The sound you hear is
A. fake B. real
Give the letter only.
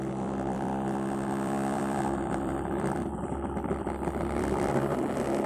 A